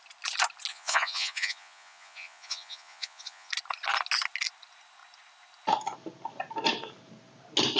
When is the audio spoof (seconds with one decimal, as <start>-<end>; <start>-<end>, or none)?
0.7-3.5